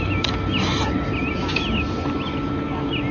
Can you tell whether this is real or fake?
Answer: real